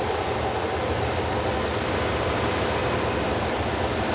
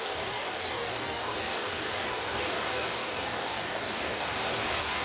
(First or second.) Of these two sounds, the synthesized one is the second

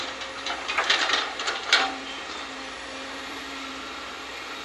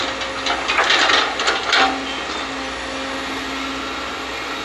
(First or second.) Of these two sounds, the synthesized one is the first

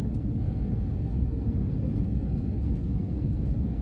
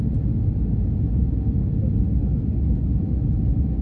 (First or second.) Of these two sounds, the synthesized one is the first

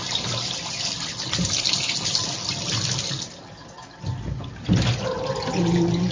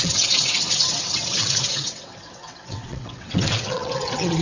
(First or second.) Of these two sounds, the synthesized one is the second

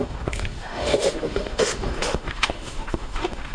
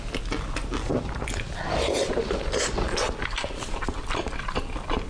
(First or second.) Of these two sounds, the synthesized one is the first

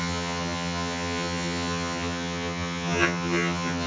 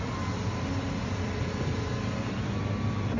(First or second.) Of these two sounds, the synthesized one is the first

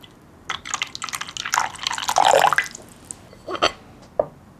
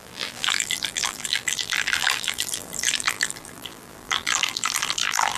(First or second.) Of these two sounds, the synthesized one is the second